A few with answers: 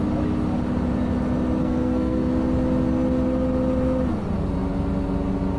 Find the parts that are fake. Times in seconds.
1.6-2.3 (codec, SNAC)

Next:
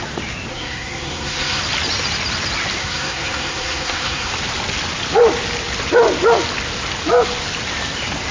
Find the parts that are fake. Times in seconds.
0.5-1.6 (codec, SNAC); 2.8-4.3

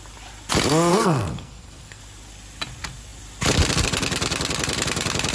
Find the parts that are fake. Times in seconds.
0.9-2.0 (codec, SNAC)